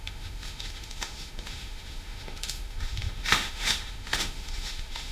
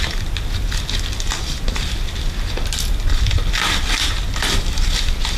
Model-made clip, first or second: first